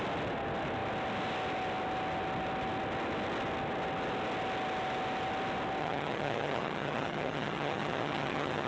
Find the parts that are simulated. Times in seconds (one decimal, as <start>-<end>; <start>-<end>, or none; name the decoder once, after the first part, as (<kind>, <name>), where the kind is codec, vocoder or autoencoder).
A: 5.8-8.7 (vocoder, HiFi-GAN)